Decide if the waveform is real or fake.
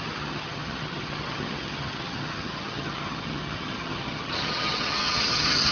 fake